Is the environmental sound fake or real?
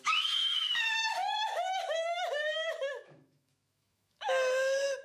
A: fake